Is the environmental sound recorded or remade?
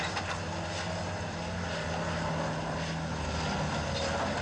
recorded